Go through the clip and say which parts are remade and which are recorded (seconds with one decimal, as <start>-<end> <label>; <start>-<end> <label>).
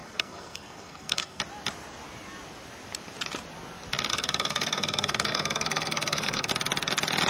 0.0-1.4 remade; 1.4-4.1 recorded; 4.1-6.5 remade; 6.5-7.3 recorded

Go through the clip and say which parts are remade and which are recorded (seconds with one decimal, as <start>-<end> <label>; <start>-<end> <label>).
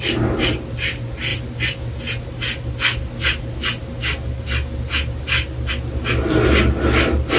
0.0-7.4 recorded